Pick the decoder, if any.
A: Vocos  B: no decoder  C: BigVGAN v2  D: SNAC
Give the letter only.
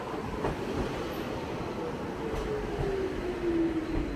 B